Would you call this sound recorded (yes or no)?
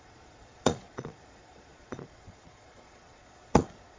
no